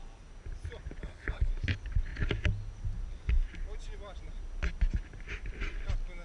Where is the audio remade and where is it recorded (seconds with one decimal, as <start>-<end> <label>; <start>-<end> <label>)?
0.0-1.0 recorded; 1.0-1.5 remade; 1.5-6.2 recorded

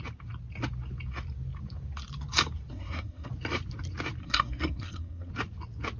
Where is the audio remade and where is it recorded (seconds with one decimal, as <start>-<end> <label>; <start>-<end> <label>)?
0.0-2.7 recorded; 2.7-3.3 remade; 3.3-4.2 recorded; 4.2-5.3 remade; 5.3-6.0 recorded